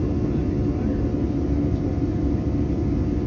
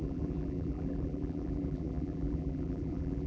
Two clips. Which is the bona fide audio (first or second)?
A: first